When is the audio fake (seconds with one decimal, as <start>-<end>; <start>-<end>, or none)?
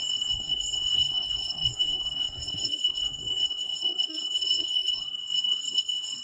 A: 0.0-6.2